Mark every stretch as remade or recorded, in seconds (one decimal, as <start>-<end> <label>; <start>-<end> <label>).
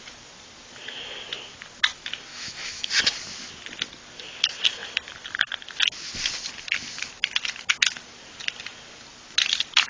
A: 0.0-2.3 recorded; 2.3-2.9 remade; 2.9-9.9 recorded